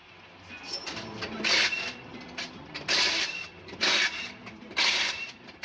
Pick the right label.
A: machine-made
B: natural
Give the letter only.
B